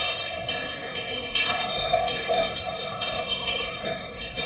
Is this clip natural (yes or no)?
no